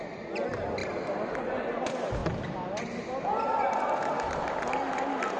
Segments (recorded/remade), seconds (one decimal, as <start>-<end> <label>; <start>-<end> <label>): 0.0-5.4 recorded